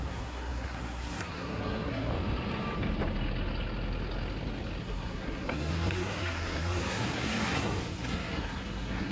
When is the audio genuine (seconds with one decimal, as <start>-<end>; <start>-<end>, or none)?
2.1-4.8